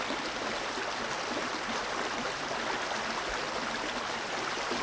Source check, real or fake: real